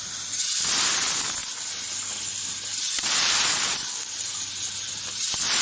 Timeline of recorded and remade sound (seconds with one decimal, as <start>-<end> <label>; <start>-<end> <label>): 0.0-2.7 recorded; 2.7-4.5 remade; 4.5-5.6 recorded